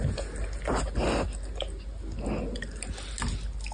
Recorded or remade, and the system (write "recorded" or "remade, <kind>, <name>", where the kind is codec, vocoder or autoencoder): recorded